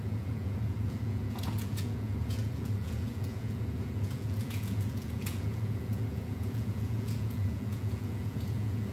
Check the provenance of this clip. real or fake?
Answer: fake